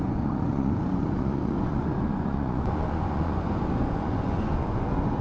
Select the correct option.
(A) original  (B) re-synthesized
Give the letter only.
B